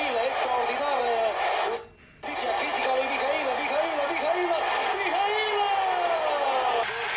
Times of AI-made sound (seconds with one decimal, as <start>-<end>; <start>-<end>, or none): none